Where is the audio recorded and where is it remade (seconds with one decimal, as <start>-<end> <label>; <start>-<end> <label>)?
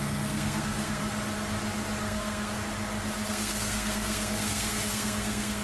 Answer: 0.0-1.0 remade; 1.0-2.0 recorded; 2.0-2.6 remade; 2.6-3.3 recorded; 3.3-5.6 remade